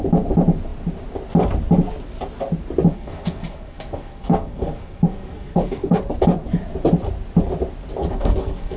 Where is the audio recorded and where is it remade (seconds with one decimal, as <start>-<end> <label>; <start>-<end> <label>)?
0.0-2.9 recorded; 2.9-6.0 remade; 6.0-8.0 recorded; 8.0-8.8 remade